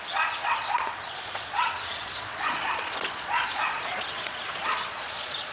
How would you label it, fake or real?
fake